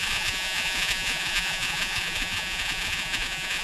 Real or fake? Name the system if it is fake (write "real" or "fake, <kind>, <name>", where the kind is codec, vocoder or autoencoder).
fake, vocoder, Vocos